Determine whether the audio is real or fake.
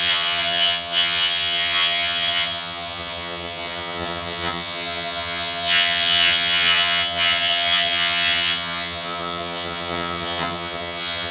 fake